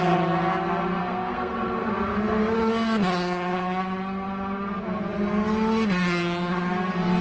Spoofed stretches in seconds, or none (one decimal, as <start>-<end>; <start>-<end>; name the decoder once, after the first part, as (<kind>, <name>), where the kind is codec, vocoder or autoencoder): 1.0-1.9 (codec, SNAC)